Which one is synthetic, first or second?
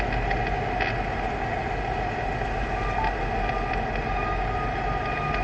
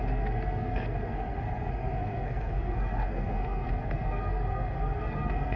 second